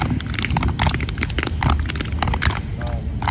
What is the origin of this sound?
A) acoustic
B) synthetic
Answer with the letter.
A